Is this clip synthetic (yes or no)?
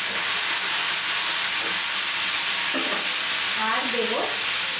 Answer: no